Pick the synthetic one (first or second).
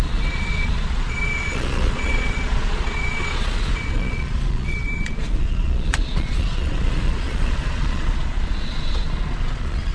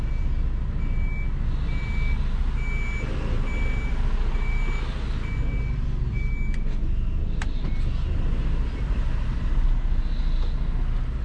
first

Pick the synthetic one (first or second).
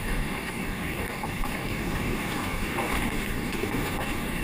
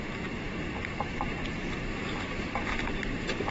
first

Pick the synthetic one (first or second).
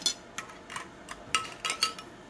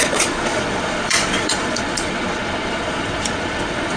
second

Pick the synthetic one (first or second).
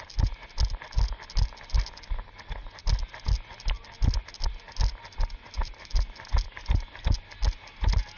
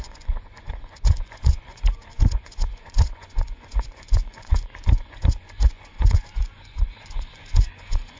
second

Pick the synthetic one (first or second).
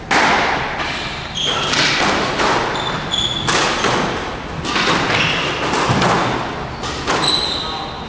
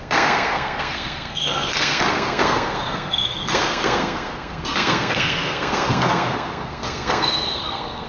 second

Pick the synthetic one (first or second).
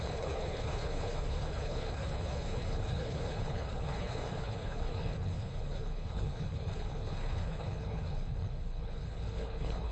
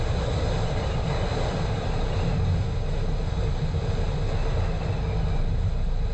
first